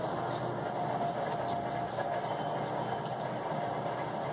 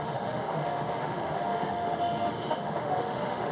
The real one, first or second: first